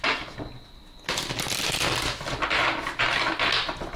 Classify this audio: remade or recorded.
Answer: recorded